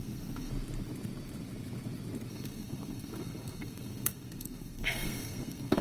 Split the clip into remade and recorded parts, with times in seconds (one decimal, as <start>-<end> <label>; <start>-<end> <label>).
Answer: 0.0-0.5 remade; 0.5-2.3 recorded; 2.3-5.8 remade